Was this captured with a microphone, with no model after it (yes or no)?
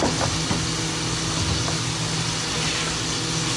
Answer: yes